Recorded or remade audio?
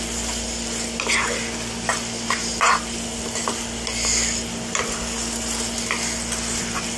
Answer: recorded